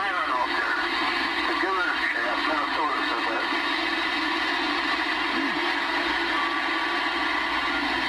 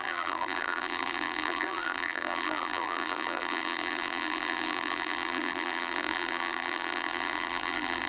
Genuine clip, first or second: first